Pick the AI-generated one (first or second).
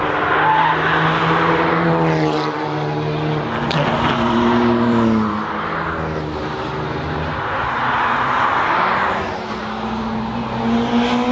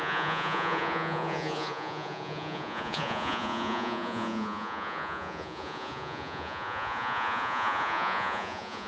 second